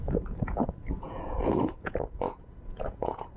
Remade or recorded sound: remade